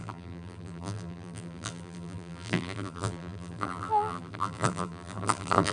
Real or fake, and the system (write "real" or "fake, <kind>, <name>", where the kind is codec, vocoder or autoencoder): fake, vocoder, BigVGAN v2